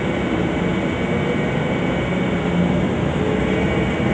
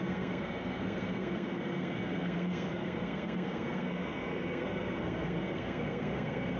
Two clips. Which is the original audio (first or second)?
first